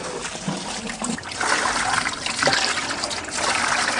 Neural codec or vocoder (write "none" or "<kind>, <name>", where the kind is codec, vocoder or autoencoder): none